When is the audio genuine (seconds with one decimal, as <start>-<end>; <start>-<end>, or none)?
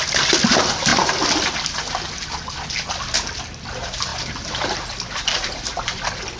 0.0-6.4